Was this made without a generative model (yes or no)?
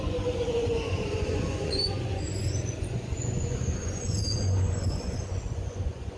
no